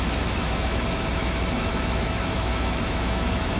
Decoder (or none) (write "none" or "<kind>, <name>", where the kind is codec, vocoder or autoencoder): autoencoder, DAC-VAE